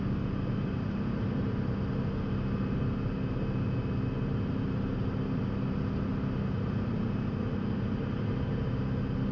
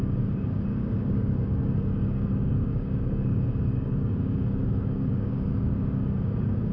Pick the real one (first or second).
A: first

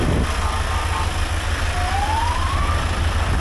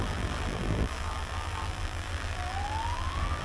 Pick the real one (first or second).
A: first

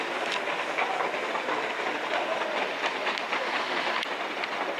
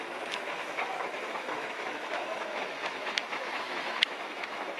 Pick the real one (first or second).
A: first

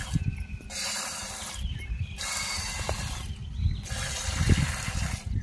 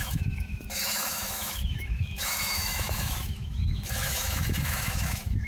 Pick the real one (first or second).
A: first